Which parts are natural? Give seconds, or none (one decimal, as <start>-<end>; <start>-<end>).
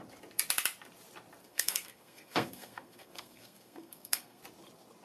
0.0-1.4; 4.4-5.0